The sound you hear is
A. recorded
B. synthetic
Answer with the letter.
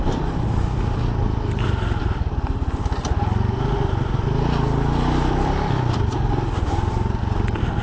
A